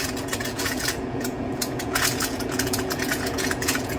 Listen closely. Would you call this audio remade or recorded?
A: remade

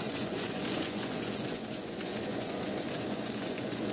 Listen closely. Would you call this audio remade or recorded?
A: remade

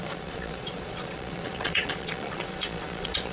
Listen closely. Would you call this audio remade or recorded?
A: remade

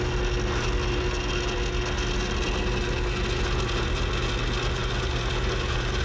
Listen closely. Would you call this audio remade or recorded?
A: recorded